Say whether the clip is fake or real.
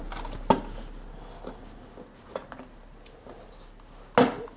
real